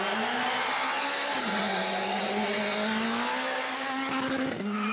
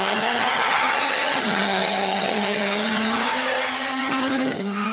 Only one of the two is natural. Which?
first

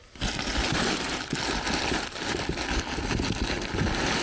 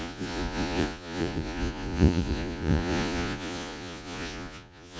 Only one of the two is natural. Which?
first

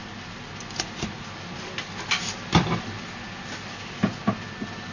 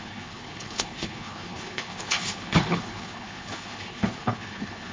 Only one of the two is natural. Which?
first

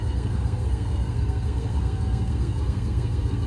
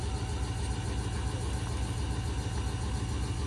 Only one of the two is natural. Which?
second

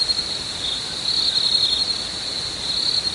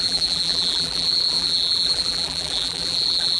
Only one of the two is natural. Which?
first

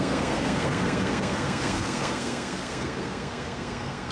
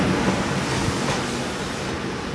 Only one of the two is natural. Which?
second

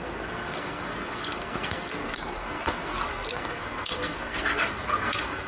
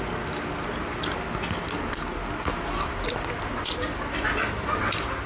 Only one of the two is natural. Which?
second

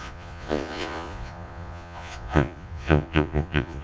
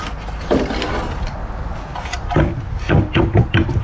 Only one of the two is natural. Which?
second